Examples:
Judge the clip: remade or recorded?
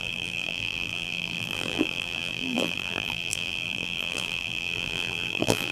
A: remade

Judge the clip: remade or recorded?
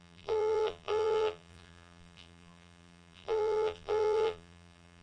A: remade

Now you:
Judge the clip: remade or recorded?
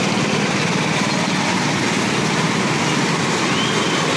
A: recorded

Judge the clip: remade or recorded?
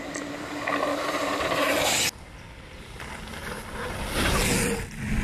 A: recorded